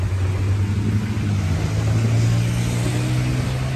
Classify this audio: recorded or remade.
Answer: recorded